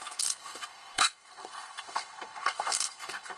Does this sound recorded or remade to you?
remade